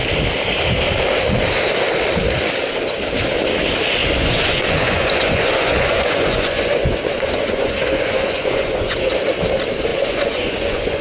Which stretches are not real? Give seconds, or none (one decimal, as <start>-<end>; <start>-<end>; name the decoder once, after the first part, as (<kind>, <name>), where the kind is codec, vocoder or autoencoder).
4.0-9.1 (vocoder, Vocos); 9.9-11.0